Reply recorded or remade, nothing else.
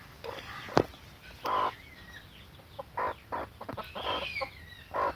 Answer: recorded